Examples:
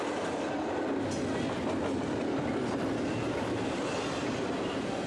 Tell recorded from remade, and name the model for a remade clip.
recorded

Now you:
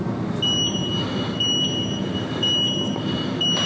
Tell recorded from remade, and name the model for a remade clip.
recorded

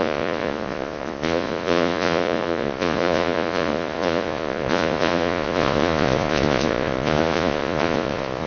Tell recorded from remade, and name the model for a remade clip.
remade, vocoder, Vocos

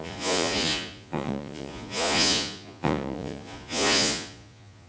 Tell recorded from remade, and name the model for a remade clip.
remade, vocoder, Vocos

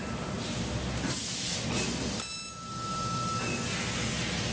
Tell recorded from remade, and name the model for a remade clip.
recorded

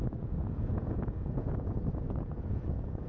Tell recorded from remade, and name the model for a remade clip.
remade, vocoder, Vocos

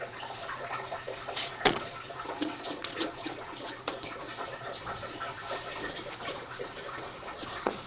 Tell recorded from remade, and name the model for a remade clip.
remade, vocoder, Vocos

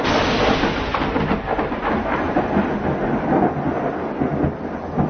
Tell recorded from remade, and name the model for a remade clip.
recorded